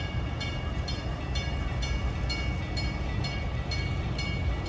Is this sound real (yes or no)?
yes